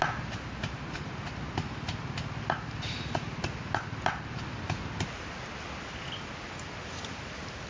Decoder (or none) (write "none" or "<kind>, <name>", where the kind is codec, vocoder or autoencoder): none